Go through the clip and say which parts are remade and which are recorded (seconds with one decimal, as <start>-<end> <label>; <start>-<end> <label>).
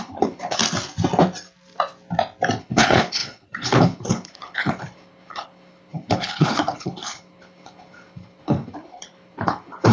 0.0-0.6 remade; 0.6-2.6 recorded; 2.6-9.9 remade